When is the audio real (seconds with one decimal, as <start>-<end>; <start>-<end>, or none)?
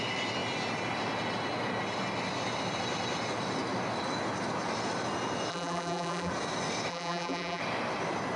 0.0-5.5; 6.3-6.9; 7.6-8.4